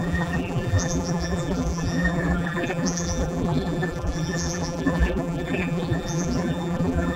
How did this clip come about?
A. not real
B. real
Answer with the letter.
A